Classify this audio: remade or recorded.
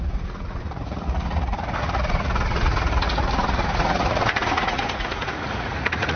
remade